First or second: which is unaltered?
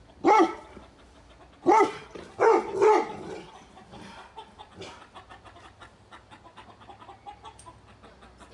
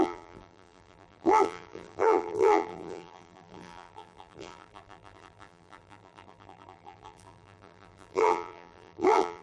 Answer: first